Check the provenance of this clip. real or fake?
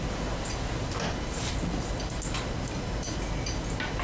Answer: real